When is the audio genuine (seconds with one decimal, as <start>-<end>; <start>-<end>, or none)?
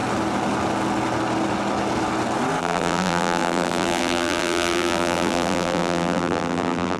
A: 0.0-2.6